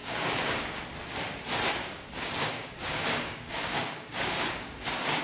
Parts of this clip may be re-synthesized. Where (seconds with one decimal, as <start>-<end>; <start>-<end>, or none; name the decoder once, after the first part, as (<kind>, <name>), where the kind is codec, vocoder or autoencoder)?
0.0-0.8 (codec, DAC); 1.8-5.2